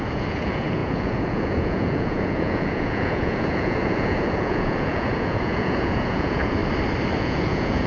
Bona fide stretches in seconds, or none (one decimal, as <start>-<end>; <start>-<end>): 6.6-7.2